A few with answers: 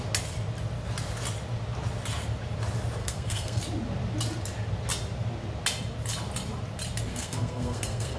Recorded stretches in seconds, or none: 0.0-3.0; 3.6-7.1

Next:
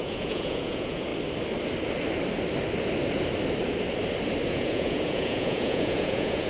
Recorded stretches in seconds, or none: 1.1-4.5